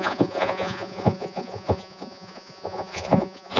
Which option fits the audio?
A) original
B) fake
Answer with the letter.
B